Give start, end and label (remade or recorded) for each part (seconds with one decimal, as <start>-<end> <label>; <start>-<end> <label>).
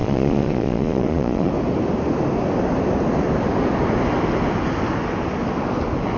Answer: 0.0-1.5 remade; 1.5-6.2 recorded